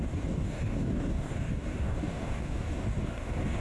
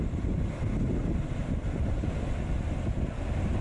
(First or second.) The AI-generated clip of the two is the first